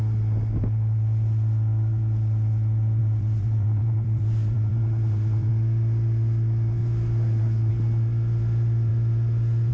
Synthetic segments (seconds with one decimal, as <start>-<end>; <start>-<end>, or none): 3.0-5.5; 6.8-7.7